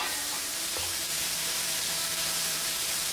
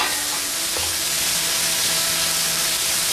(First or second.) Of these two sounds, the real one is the second